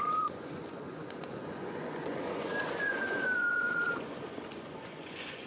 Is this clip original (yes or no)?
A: no